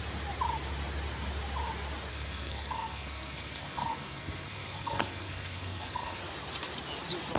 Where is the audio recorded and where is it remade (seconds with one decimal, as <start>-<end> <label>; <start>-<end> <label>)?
0.0-2.1 recorded; 2.1-6.2 remade; 6.2-7.4 recorded